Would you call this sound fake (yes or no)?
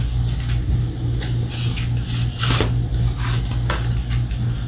no